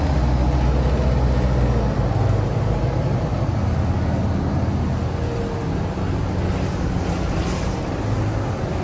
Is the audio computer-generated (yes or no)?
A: no